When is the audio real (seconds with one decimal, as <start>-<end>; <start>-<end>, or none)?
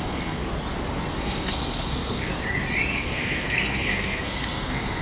0.4-1.0; 2.3-2.9